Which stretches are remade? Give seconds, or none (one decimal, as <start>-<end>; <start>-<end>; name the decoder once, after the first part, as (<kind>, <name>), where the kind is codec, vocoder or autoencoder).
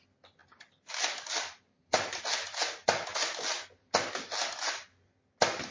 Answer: 0.4-2.2 (vocoder, BigVGAN v2)